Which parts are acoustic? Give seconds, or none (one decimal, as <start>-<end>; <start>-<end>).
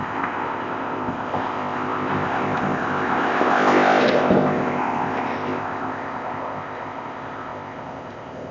none